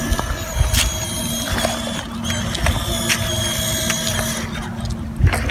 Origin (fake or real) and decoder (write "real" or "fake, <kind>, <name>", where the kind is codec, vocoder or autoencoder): real